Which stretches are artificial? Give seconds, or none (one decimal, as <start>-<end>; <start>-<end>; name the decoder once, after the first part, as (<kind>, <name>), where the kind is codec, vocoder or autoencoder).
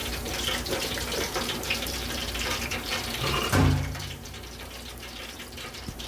0.0-6.1 (vocoder, BigVGAN v2)